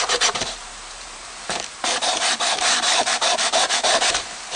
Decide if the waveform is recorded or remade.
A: remade